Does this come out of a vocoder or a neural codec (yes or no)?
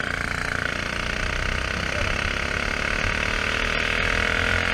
no